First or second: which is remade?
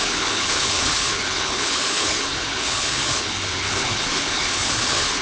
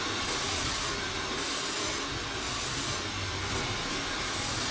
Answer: first